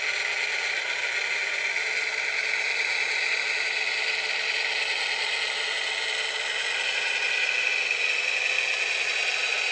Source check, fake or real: real